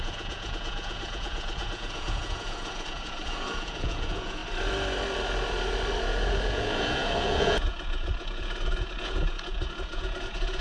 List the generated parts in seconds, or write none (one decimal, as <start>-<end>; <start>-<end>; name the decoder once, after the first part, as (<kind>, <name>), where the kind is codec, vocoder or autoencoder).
0.0-4.4 (vocoder, Vocos); 6.0-10.6